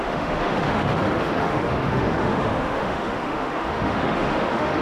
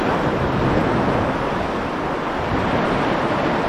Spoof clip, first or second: first